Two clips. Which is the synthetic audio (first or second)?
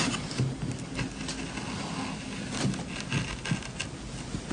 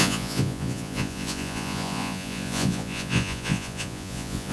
second